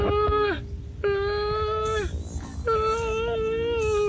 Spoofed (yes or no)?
no